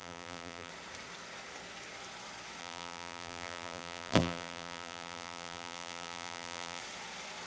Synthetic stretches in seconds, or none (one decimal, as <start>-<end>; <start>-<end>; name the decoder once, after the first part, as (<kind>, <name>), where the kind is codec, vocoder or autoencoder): 0.0-0.7 (vocoder, BigVGAN v2); 2.6-6.8